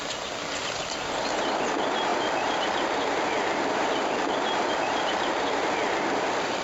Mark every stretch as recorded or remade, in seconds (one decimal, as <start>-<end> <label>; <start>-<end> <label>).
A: 0.0-6.6 recorded